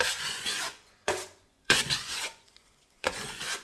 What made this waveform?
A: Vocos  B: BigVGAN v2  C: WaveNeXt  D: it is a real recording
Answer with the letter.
A